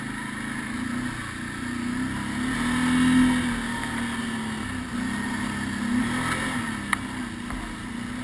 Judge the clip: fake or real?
real